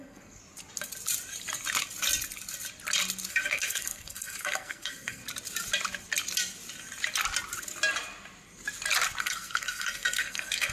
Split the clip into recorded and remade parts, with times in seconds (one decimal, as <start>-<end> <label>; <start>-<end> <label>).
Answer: 0.0-0.4 remade; 0.4-3.3 recorded; 3.3-5.2 remade; 5.2-9.2 recorded; 9.2-10.7 remade